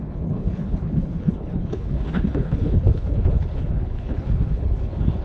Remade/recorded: remade